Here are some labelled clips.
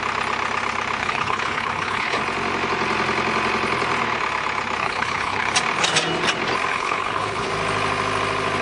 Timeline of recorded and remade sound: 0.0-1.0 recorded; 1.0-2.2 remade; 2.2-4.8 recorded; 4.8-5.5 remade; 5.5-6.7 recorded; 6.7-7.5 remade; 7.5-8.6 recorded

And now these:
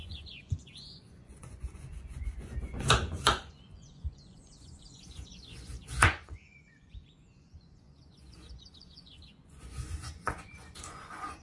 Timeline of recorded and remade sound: 0.0-11.4 remade

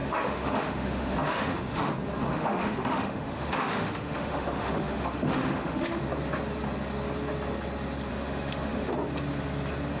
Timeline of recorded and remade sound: 0.0-1.9 remade; 1.9-2.3 recorded; 2.3-6.0 remade; 6.0-8.1 recorded; 8.1-8.9 remade; 8.9-10.0 recorded

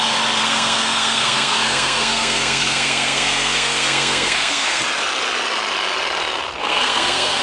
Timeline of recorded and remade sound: 0.0-0.4 recorded; 0.4-4.8 remade; 4.8-6.6 recorded; 6.6-7.4 remade

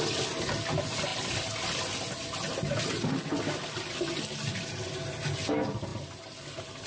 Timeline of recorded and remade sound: 0.0-6.9 recorded

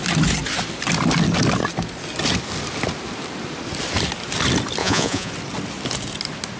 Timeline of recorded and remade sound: 0.0-4.8 recorded; 4.8-5.3 remade; 5.3-6.6 recorded

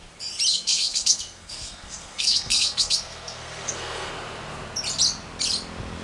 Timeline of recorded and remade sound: 0.0-0.5 recorded; 0.5-4.1 remade; 4.1-6.0 recorded

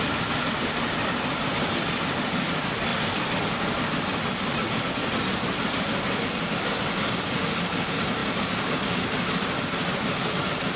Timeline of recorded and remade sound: 0.0-10.8 recorded